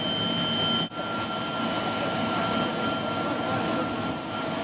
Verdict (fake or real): real